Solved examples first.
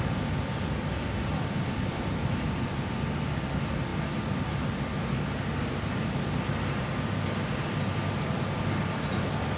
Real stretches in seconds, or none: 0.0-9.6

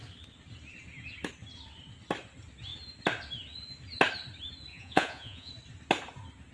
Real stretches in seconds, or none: 0.0-4.7; 5.5-6.5